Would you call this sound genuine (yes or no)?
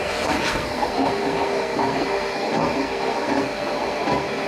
no